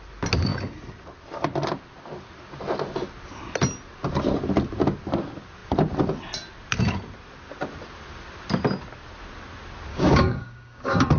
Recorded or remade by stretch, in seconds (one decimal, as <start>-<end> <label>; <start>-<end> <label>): 0.0-9.9 recorded; 9.9-11.2 remade